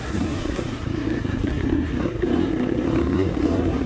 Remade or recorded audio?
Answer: remade